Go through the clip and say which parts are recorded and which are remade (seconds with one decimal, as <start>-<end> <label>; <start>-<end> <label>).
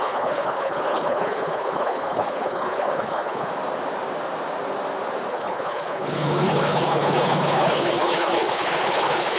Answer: 0.0-3.5 remade; 3.5-5.3 recorded; 5.3-9.4 remade